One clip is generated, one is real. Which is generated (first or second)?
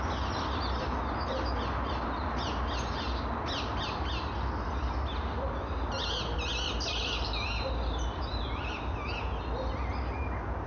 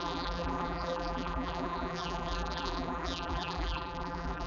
second